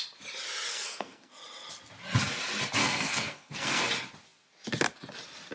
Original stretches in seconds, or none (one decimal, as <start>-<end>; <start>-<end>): 0.0-0.7; 1.3-2.8; 3.8-5.5